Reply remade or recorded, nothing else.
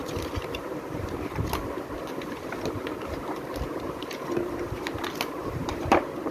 remade